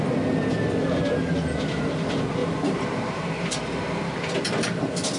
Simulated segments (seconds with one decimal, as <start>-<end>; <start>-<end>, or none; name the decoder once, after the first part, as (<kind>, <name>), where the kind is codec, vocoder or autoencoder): 2.4-3.5 (vocoder, BigVGAN v2)